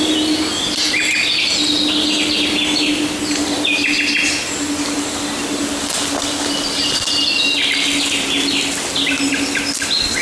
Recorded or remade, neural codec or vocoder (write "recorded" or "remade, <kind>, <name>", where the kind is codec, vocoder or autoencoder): recorded